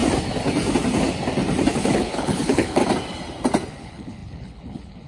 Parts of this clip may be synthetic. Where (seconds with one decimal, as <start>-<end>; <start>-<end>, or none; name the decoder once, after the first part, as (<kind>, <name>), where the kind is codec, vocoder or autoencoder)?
1.7-2.8 (codec, HILCodec); 3.7-5.1